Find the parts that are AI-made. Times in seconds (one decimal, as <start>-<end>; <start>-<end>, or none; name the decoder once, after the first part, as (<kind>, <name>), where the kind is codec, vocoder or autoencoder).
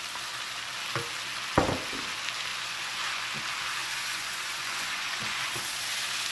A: 2.5-3.3 (vocoder, Vocos); 3.8-5.5